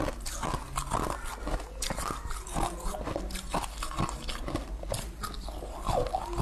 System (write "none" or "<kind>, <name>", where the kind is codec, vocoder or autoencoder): none